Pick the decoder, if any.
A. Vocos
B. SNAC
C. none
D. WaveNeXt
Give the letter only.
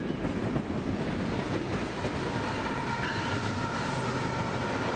C